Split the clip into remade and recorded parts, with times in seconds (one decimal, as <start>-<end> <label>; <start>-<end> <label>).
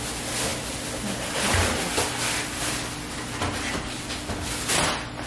0.0-5.3 recorded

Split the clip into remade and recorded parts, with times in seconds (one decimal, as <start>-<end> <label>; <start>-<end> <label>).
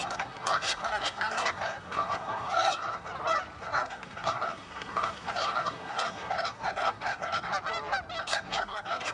0.0-3.1 remade; 3.1-3.6 recorded; 3.6-7.5 remade; 7.5-8.2 recorded; 8.2-9.1 remade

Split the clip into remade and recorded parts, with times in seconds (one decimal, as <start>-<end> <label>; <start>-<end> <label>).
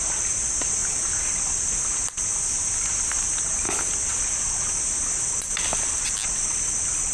0.0-7.1 recorded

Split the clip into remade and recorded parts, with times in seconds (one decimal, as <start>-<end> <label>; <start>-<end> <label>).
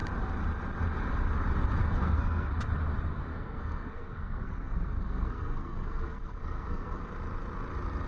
0.0-1.8 recorded; 1.8-2.5 remade; 2.5-3.3 recorded; 3.3-7.0 remade; 7.0-8.1 recorded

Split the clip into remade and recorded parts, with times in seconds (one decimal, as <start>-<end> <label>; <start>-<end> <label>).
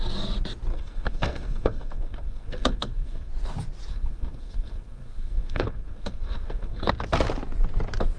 0.0-0.7 recorded; 0.7-3.3 remade; 3.3-3.9 recorded; 3.9-6.9 remade; 6.9-8.2 recorded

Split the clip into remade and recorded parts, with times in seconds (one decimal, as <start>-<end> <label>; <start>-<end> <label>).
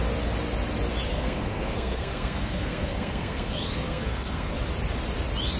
0.0-1.1 recorded; 1.1-4.5 remade; 4.5-5.6 recorded